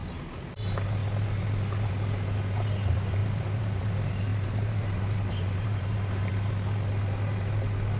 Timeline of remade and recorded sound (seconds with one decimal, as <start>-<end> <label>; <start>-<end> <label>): 0.0-0.6 remade; 0.6-3.2 recorded; 3.2-3.8 remade; 3.8-4.3 recorded; 4.3-6.3 remade; 6.3-8.0 recorded